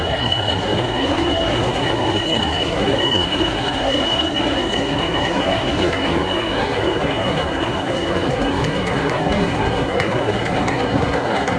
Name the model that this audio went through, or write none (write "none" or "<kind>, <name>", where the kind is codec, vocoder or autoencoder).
codec, SNAC